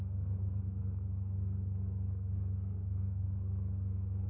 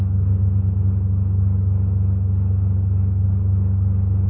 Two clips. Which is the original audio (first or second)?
second